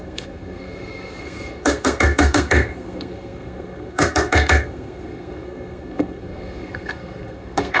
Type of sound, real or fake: fake